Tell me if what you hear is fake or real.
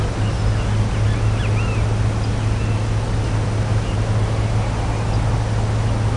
real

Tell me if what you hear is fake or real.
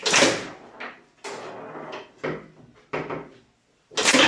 real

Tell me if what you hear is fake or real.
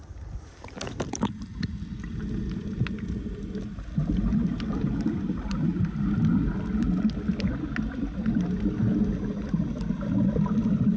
real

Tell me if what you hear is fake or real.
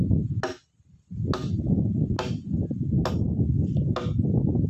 real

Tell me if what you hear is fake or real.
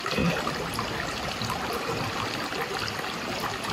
real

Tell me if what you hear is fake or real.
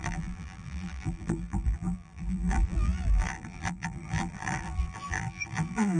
fake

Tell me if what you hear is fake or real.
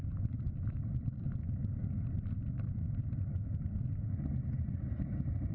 fake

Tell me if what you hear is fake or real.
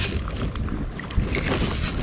real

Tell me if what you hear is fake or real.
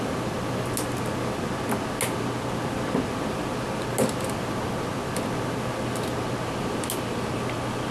real